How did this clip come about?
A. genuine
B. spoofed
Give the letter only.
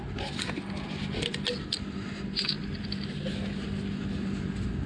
A